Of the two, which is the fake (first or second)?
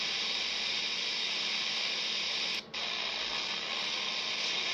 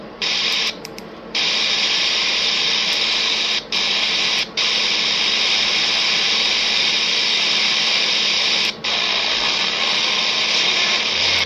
second